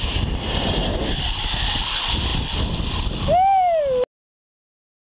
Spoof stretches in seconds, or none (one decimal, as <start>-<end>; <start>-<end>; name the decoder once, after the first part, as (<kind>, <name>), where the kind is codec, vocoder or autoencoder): none